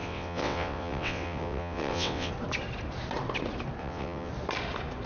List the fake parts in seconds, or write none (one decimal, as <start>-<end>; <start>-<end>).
0.0-2.3; 3.8-4.3